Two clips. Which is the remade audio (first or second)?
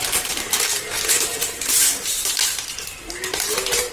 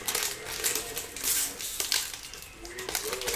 first